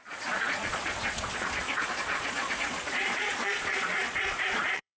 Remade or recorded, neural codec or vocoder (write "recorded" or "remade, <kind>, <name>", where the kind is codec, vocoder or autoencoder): remade, vocoder, Vocos